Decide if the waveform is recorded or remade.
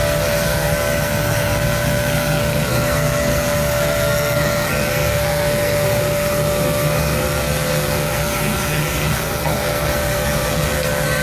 remade